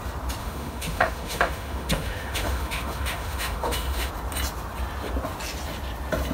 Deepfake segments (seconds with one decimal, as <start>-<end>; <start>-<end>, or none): 0.4-4.1